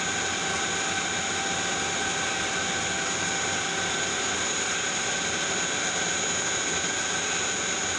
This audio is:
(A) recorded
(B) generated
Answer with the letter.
A